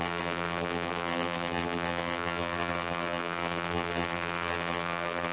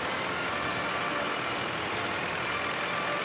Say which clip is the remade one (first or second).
first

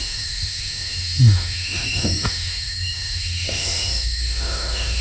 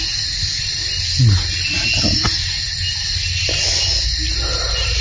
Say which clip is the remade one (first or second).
first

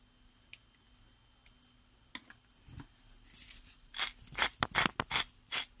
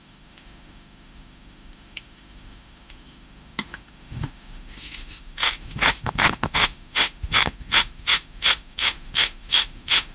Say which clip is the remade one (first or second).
second